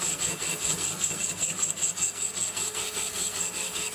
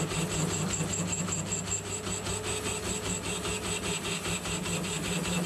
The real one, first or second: second